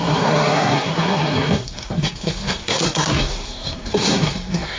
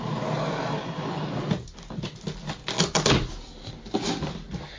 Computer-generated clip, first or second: first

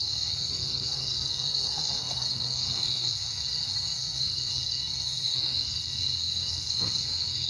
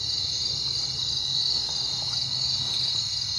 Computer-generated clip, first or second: first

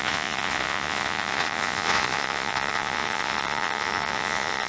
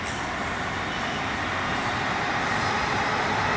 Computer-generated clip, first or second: first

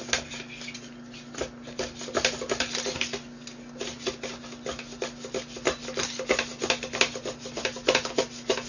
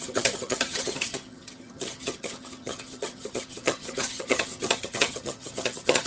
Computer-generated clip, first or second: second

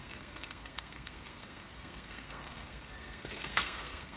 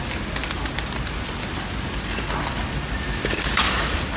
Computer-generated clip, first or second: first